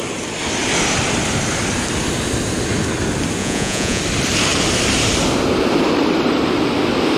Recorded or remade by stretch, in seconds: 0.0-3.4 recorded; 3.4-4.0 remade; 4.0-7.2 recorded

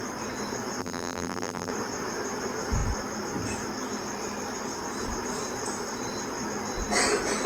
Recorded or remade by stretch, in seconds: 0.0-0.8 recorded; 0.8-1.7 remade; 1.7-7.5 recorded

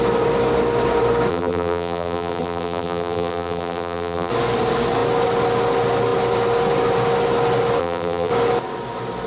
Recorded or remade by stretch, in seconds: 0.0-1.3 recorded; 1.3-4.3 remade; 4.3-7.8 recorded; 7.8-8.3 remade; 8.3-9.3 recorded